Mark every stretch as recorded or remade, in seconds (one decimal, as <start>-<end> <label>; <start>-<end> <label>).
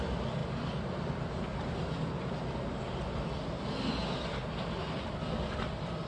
0.0-6.1 recorded